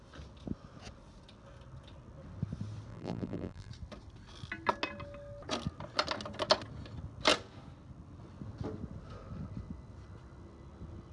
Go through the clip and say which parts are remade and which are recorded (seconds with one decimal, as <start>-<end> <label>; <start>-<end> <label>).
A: 0.0-2.9 recorded; 2.9-3.7 remade; 3.7-11.1 recorded